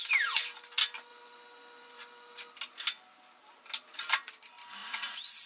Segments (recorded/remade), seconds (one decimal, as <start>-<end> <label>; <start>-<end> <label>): 0.0-5.5 recorded